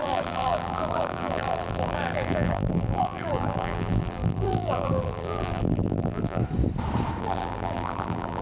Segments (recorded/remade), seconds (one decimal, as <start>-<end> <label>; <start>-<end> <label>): 0.0-6.4 remade; 6.4-7.2 recorded; 7.2-8.4 remade